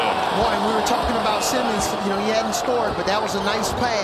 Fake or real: real